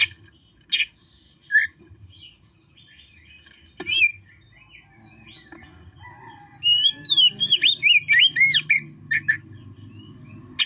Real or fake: real